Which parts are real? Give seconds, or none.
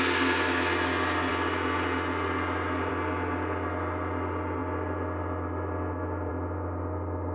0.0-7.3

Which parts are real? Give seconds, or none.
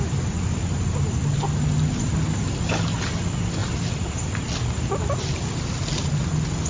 0.0-6.7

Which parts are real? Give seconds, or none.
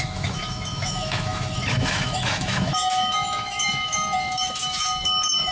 none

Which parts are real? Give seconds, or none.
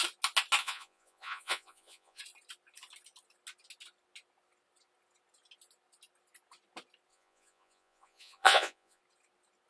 0.0-0.6; 2.2-7.1; 9.0-9.7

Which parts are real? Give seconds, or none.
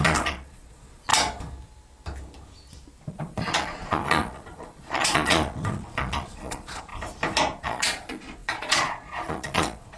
1.1-3.1; 6.9-7.6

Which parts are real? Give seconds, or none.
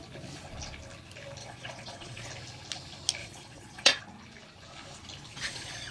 0.0-1.4; 2.3-3.2; 4.0-5.3